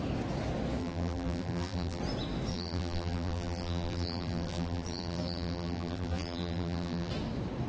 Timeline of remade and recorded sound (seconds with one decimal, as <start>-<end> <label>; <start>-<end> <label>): 0.0-0.8 recorded; 0.8-2.0 remade; 2.0-2.5 recorded; 2.5-7.1 remade; 7.1-7.7 recorded